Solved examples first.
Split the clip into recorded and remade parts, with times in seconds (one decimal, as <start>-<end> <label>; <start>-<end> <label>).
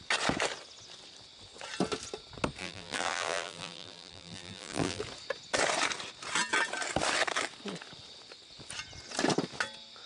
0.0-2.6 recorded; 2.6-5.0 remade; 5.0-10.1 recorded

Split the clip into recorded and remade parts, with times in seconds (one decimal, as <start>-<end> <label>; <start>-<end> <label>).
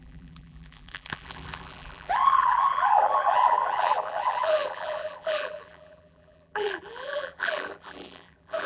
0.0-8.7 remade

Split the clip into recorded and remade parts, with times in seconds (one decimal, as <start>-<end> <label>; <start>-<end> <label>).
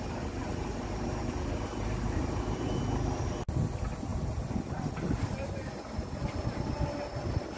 0.0-0.4 recorded; 0.4-2.8 remade; 2.8-7.6 recorded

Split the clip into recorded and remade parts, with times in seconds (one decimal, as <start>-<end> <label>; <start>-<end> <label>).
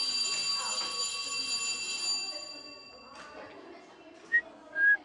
0.0-5.0 recorded